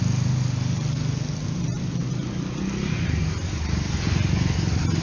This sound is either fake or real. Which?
real